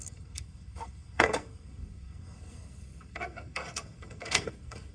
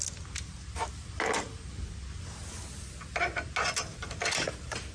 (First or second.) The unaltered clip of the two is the second